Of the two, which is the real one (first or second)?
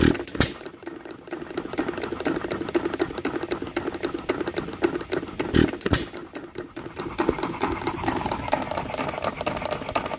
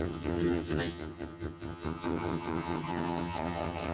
first